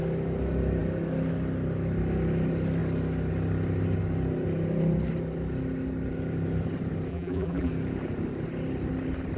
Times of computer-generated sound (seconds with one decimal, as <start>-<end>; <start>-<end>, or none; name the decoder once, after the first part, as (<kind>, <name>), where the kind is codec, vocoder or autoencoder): 7.1-7.7 (vocoder, BigVGAN v2)